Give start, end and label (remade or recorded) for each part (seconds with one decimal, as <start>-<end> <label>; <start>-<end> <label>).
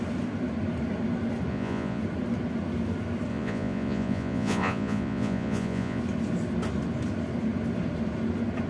0.0-1.5 recorded; 1.5-2.0 remade; 2.0-3.3 recorded; 3.3-6.0 remade; 6.0-8.7 recorded